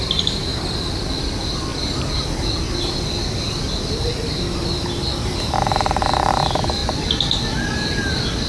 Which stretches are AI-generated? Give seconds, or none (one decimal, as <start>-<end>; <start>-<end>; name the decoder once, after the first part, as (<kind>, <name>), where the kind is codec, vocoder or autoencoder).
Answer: none